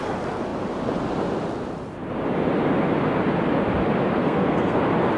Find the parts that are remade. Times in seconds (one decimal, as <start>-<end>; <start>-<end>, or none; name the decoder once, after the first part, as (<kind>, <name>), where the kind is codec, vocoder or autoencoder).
4.2-4.8 (codec, SNAC)